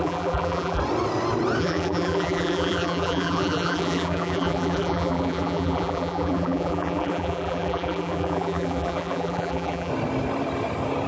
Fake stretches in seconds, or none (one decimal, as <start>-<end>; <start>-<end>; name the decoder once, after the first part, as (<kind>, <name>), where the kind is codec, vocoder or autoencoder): 0.0-0.8 (vocoder, BigVGAN v2); 1.6-9.9